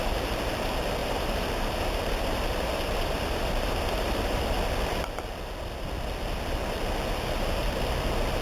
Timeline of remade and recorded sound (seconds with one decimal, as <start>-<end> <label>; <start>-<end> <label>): 0.0-1.0 recorded; 1.0-4.4 remade; 4.4-8.4 recorded